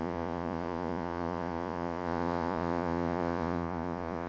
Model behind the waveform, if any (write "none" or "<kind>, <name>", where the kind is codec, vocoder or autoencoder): vocoder, Vocos